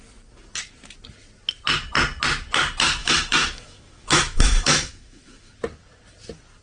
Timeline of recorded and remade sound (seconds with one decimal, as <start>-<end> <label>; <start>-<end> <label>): 0.0-3.0 recorded; 3.0-5.5 remade; 5.5-6.6 recorded